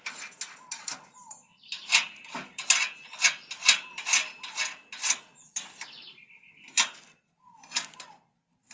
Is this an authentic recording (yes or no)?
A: yes